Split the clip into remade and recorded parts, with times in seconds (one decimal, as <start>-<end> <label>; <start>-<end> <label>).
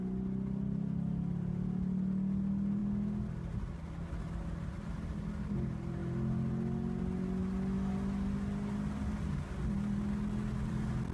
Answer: 0.0-11.1 recorded